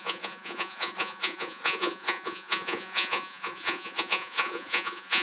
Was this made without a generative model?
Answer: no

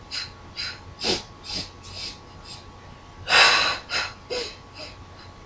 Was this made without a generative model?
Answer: yes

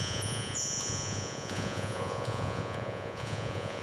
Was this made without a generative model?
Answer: no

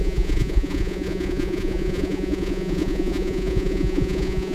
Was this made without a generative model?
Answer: no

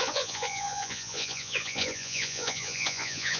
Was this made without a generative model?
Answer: no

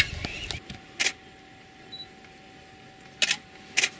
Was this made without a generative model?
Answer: yes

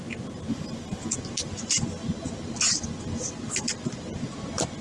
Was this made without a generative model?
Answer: yes